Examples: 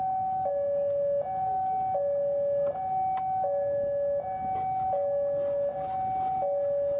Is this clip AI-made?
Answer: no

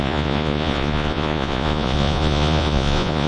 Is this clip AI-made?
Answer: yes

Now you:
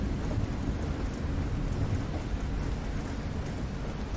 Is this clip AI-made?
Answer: no